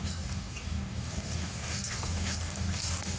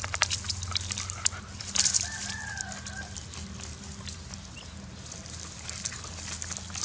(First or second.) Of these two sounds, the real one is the second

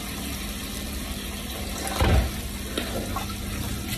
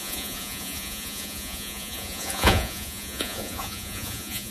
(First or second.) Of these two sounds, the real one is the first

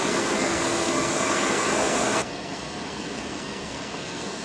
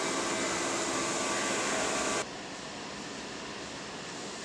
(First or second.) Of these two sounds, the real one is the second